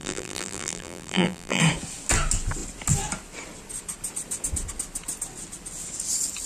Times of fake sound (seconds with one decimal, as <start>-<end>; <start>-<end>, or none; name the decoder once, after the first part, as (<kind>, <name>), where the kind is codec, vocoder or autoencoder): 0.0-1.6 (vocoder, BigVGAN v2)